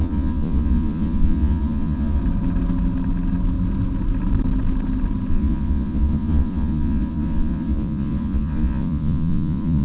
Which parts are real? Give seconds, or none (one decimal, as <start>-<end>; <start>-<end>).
2.2-5.3